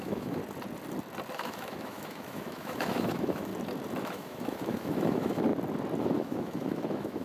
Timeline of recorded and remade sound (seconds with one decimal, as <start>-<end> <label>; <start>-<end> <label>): 0.0-0.4 remade; 0.4-1.3 recorded; 1.3-3.5 remade; 3.5-4.0 recorded; 4.0-5.5 remade; 5.5-6.0 recorded; 6.0-7.2 remade